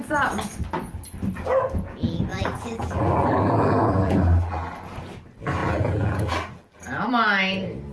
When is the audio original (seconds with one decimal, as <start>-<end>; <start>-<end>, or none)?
0.0-2.3; 4.8-5.6; 7.1-7.9